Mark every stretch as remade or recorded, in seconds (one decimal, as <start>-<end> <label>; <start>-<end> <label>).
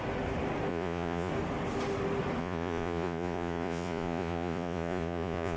0.0-0.7 recorded; 0.7-1.3 remade; 1.3-2.4 recorded; 2.4-5.6 remade